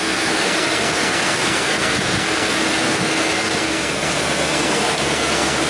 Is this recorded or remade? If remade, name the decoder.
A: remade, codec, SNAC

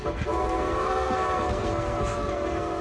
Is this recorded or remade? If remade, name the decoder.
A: remade, codec, SNAC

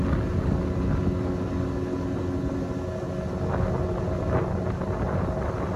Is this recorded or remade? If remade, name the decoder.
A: recorded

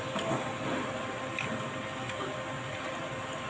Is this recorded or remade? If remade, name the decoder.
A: recorded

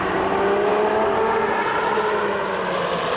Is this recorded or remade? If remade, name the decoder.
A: recorded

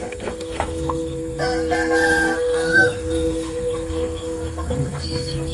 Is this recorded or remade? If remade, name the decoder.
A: remade, codec, SNAC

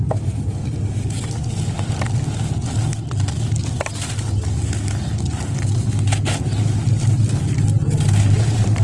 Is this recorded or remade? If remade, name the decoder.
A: recorded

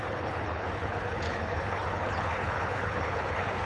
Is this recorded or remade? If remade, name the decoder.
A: remade, codec, HILCodec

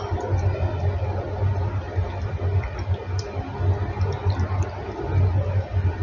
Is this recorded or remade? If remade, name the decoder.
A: recorded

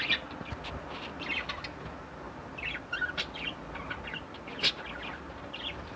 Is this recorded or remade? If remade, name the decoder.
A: recorded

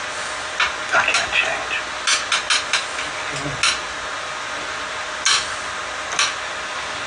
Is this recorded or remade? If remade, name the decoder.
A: recorded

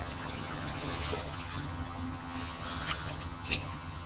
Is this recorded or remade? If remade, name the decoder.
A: remade, vocoder, HiFi-GAN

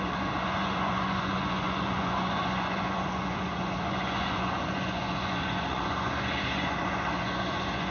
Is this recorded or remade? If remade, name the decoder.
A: remade, vocoder, Vocos